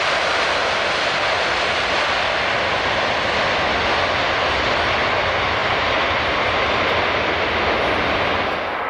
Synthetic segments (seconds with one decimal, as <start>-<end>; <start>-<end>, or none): none